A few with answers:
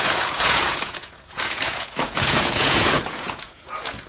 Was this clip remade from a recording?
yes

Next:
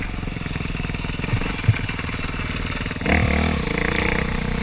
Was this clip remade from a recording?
no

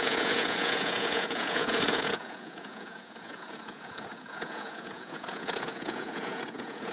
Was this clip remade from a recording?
yes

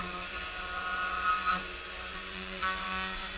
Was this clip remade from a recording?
yes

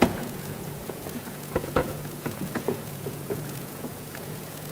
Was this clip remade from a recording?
yes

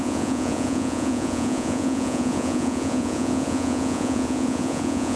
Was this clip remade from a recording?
yes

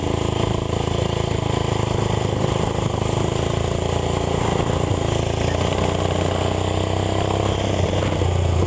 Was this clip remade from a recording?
no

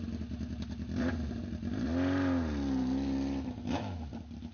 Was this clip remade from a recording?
no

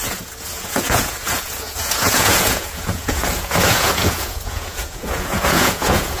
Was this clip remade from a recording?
yes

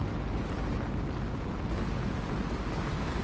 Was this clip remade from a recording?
no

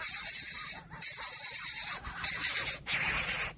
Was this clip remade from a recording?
no